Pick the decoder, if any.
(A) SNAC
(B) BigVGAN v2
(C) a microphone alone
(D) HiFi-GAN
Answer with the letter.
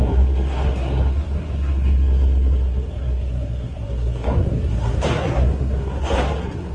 A